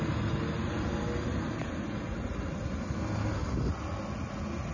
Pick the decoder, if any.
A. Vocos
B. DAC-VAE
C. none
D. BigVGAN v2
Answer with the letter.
C